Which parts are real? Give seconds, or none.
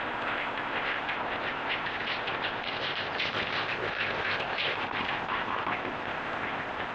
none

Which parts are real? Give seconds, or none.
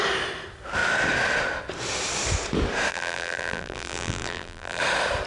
0.0-2.9; 4.8-5.3